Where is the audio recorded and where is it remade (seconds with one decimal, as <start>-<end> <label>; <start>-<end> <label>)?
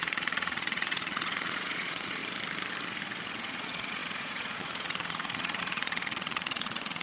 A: 0.0-2.2 remade; 2.2-3.3 recorded; 3.3-7.0 remade